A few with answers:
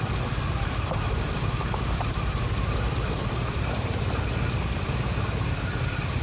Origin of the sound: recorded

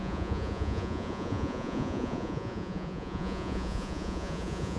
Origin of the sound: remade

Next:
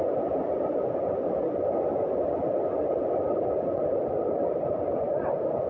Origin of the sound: recorded